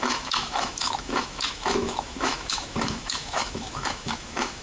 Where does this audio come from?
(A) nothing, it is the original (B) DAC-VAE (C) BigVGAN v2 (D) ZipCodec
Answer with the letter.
B